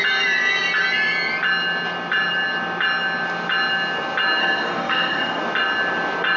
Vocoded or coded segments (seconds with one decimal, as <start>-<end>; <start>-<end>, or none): 4.4-5.4